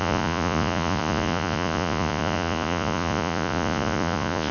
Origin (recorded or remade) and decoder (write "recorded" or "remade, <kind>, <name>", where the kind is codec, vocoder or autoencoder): remade, vocoder, Vocos